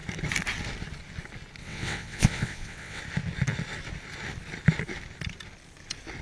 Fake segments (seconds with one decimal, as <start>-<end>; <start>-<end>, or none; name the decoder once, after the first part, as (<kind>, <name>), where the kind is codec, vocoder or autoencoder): 1.6-3.0 (vocoder, WaveNeXt)